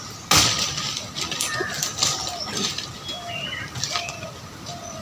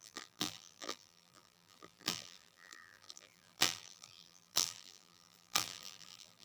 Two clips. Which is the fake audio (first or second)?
second